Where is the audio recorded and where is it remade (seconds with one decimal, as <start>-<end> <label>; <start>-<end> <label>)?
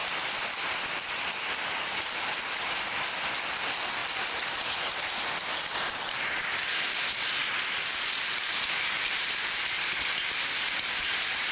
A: 0.0-11.5 recorded